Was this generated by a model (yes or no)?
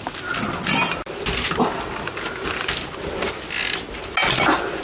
no